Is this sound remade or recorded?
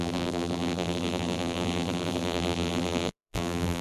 remade